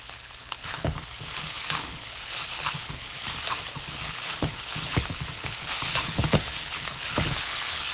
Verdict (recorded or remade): remade